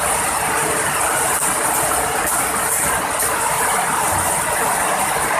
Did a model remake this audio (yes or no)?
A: no